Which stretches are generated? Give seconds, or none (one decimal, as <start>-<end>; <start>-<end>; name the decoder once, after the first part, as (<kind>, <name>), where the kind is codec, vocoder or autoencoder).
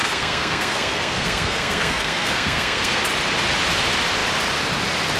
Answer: 0.0-3.0 (codec, SNAC)